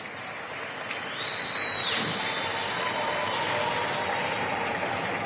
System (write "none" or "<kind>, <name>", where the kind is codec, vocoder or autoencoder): none